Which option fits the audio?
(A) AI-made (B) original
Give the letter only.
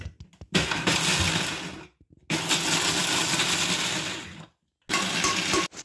B